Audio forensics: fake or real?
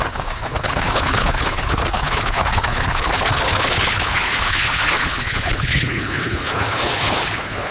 fake